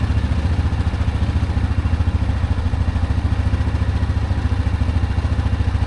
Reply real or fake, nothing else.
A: real